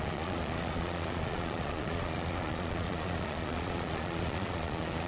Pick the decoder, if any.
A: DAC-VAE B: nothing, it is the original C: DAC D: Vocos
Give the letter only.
D